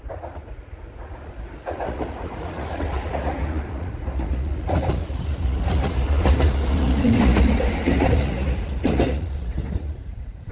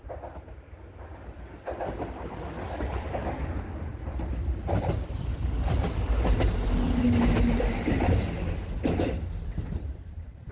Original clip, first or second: second